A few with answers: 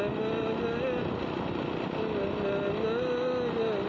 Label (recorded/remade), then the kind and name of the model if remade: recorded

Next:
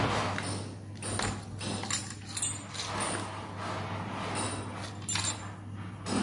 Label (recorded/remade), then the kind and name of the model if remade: recorded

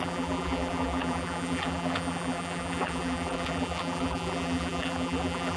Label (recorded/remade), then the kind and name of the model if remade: remade, vocoder, BigVGAN v2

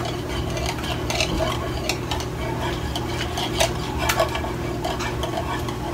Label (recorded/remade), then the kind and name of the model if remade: recorded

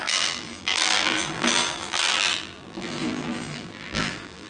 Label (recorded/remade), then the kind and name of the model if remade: remade, vocoder, BigVGAN v2